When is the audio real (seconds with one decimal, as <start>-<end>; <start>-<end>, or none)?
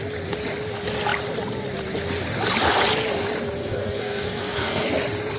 0.0-3.6; 4.9-5.4